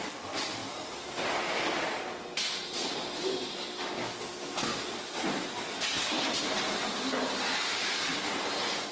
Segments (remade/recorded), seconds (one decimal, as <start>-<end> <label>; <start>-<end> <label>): 0.0-0.6 recorded; 0.6-1.2 remade; 1.2-8.9 recorded